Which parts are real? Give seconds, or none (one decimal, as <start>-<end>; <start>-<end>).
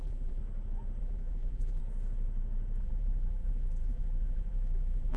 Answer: 0.4-1.0; 1.8-2.8